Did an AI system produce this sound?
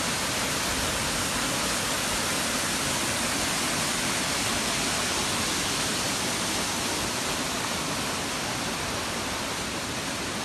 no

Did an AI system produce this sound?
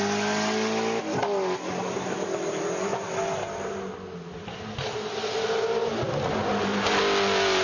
no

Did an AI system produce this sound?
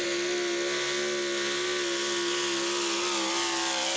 no